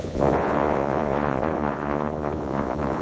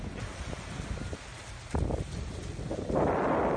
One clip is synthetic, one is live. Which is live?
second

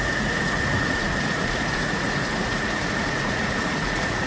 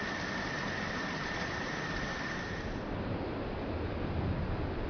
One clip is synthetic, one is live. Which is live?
second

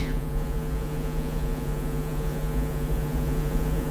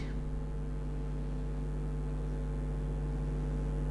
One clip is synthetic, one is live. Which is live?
second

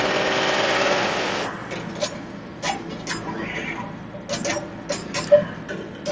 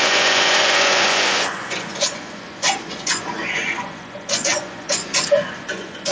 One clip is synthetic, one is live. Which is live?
first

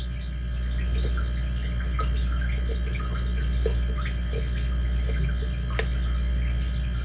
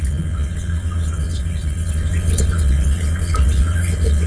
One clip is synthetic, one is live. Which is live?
first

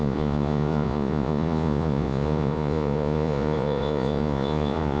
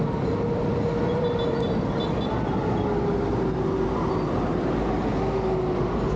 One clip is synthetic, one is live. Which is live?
second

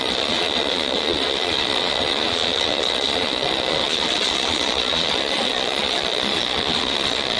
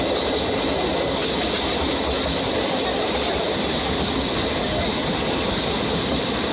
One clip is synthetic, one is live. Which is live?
second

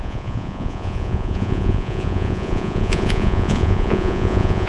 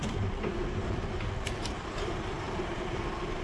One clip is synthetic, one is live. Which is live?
second